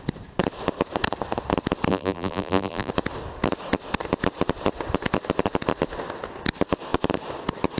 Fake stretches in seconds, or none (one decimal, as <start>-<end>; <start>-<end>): 1.9-2.9